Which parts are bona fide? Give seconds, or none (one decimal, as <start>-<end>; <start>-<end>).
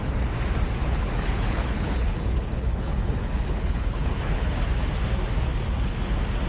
0.0-0.8; 4.7-6.5